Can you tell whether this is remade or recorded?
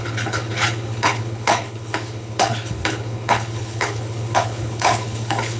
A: remade